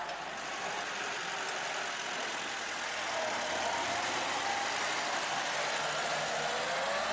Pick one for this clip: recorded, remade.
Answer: recorded